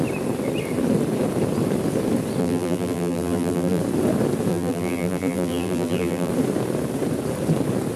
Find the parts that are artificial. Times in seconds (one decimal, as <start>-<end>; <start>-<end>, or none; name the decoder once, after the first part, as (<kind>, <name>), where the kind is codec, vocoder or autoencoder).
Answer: 2.4-3.8 (vocoder, BigVGAN v2); 4.5-6.3